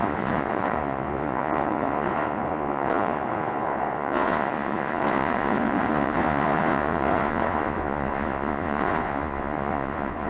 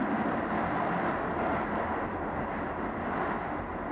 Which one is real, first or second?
second